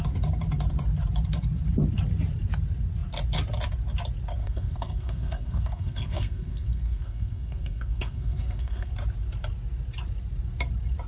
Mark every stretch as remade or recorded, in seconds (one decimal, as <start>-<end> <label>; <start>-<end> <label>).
0.0-4.4 recorded; 4.4-8.9 remade; 8.9-11.1 recorded